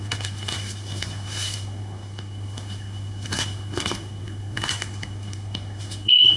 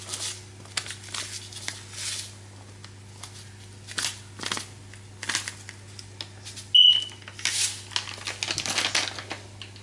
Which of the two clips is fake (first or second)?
first